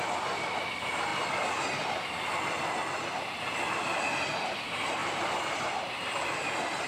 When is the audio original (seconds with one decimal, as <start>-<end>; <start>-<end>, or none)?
0.0-5.0; 6.4-6.9